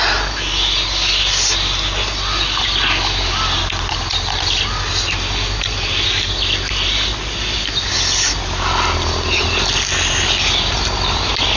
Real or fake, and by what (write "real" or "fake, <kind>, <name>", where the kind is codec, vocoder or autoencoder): real